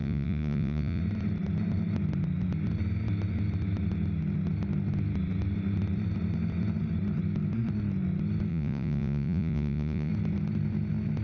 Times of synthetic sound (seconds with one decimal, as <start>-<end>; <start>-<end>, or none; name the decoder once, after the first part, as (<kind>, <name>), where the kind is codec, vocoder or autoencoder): 0.0-1.0 (vocoder, Vocos); 8.5-10.1